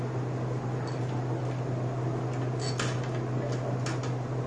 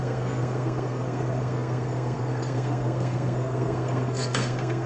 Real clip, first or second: first